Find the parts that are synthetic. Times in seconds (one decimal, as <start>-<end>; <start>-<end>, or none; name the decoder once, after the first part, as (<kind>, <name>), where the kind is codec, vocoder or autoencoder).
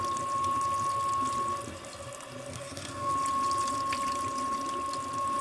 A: 2.5-3.1 (codec, SNAC)